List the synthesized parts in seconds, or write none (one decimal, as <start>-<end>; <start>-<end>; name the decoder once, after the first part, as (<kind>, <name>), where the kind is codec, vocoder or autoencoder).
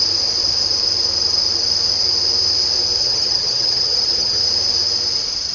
3.0-4.4 (vocoder, HiFi-GAN)